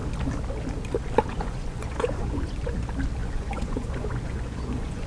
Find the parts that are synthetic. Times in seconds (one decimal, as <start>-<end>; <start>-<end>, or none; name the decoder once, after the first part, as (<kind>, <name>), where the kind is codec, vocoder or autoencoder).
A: 1.3-2.7 (vocoder, Vocos); 3.2-5.1